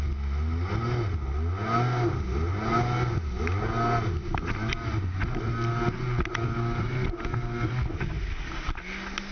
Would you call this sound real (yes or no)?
yes